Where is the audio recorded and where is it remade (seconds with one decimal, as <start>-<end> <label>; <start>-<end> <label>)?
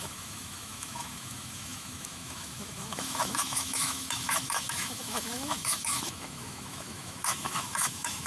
0.0-8.3 remade